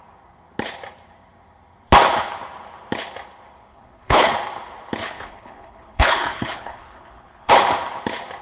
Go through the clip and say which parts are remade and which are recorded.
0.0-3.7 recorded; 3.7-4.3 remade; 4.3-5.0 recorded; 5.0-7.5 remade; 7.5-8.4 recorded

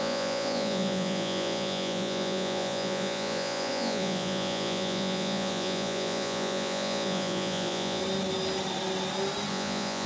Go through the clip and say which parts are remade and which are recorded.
0.0-8.0 remade; 8.0-9.5 recorded; 9.5-10.1 remade

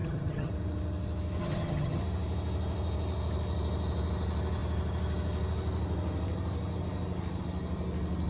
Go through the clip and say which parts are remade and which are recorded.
0.0-0.5 remade; 0.5-1.4 recorded; 1.4-2.0 remade; 2.0-8.3 recorded

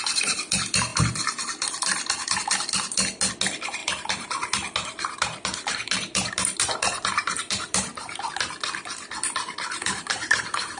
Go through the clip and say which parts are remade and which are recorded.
0.0-3.8 recorded; 3.8-8.3 remade; 8.3-9.8 recorded; 9.8-10.8 remade

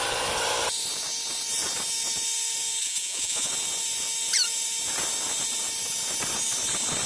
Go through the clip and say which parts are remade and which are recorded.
0.0-2.8 recorded; 2.8-3.5 remade; 3.5-7.1 recorded

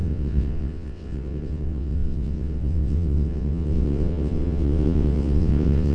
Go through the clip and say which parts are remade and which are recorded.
0.0-5.9 remade

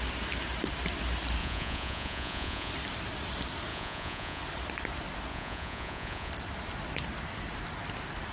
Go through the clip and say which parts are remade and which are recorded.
0.0-1.4 recorded; 1.4-2.7 remade; 2.7-3.7 recorded; 3.7-4.4 remade; 4.4-5.3 recorded; 5.3-6.3 remade; 6.3-8.3 recorded

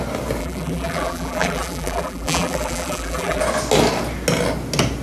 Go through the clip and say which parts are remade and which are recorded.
0.0-0.4 recorded; 0.4-3.4 remade; 3.4-5.0 recorded